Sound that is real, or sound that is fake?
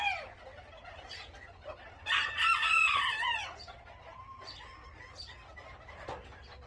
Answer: real